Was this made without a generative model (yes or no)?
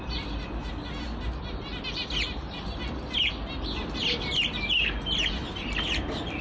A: yes